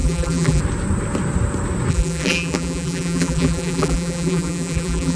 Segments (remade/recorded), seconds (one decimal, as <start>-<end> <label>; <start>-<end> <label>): 0.0-0.6 remade; 0.6-1.9 recorded; 1.9-5.2 remade